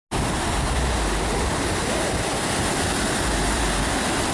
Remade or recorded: recorded